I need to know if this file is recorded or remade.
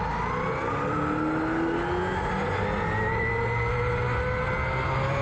recorded